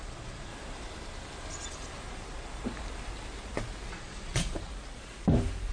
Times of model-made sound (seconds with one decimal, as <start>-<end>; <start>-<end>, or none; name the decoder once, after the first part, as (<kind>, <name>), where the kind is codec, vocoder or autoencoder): 0.0-0.5 (vocoder, Vocos); 3.9-4.7